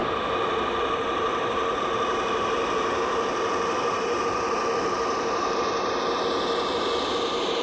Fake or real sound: fake